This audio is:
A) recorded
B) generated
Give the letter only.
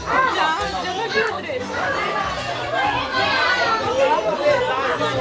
A